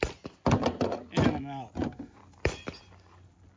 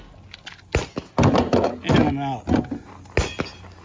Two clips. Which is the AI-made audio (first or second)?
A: first